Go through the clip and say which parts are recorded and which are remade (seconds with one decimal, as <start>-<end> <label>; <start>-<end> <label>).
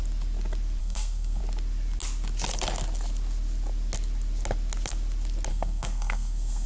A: 0.0-0.8 recorded; 0.8-1.4 remade; 1.4-5.5 recorded; 5.5-6.7 remade